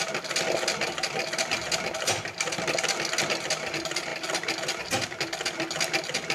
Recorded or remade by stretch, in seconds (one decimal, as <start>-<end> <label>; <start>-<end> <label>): 0.0-6.3 recorded